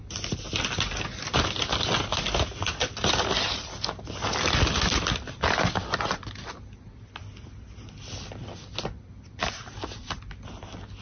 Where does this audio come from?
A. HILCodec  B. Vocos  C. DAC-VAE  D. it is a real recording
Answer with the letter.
D